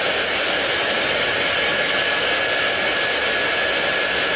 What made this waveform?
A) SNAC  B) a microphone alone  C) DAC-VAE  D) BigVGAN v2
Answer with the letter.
B